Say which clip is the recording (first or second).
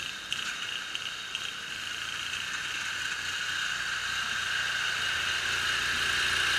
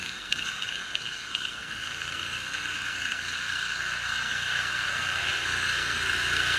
first